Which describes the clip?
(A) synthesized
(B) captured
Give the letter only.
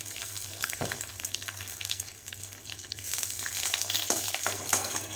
A